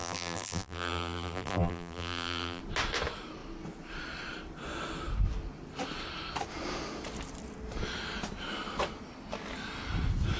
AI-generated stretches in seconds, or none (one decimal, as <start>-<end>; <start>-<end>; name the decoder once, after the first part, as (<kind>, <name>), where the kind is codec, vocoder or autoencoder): 0.0-2.6 (vocoder, BigVGAN v2)